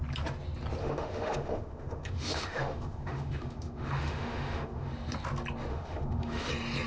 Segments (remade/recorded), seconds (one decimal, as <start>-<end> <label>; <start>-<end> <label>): 0.0-0.8 recorded; 0.8-4.9 remade; 4.9-5.7 recorded; 5.7-6.5 remade; 6.5-6.9 recorded